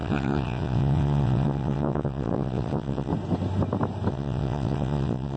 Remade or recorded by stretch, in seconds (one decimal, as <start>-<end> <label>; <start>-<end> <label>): 0.0-3.1 remade; 3.1-4.1 recorded; 4.1-5.4 remade